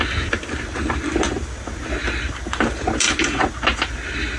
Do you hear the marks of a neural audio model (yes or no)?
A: no